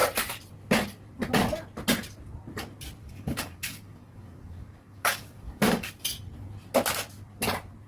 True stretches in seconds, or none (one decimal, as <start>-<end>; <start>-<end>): 0.0-3.0; 5.9-7.9